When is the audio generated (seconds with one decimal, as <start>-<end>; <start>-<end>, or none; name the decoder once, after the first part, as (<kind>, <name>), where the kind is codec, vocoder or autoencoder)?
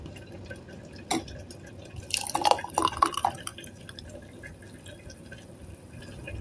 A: 3.5-6.0 (vocoder, BigVGAN v2)